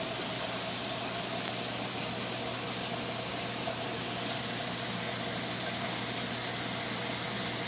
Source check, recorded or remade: recorded